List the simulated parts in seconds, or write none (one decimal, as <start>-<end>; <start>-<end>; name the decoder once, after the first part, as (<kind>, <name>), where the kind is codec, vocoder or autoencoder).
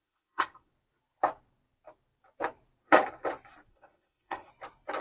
0.0-0.7 (codec, SNAC); 3.7-4.5